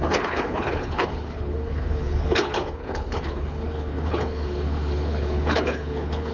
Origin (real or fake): fake